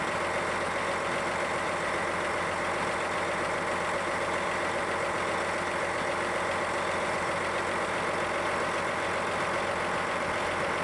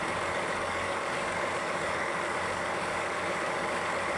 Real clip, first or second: first